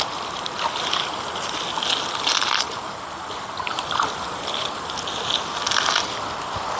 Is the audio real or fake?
real